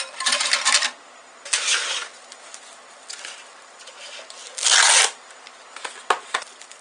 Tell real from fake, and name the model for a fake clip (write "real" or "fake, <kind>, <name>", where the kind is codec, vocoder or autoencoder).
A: real